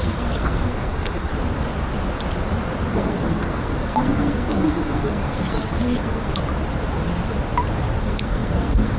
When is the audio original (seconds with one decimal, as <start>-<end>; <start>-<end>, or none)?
1.3-2.9; 6.3-8.0